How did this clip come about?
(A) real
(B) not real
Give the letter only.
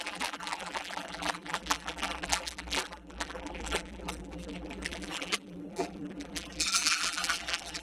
B